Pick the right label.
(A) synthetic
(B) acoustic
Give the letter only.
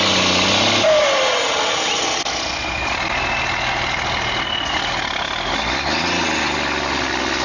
B